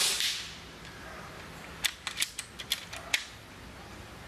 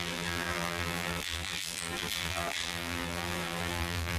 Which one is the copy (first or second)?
second